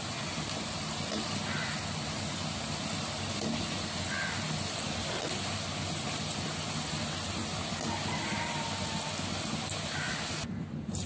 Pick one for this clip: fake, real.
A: real